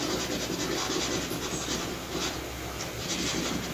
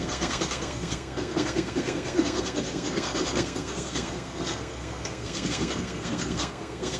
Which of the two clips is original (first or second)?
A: first